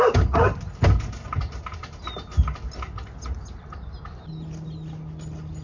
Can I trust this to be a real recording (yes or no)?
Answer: yes